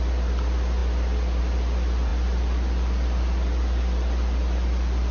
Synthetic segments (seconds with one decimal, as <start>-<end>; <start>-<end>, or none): none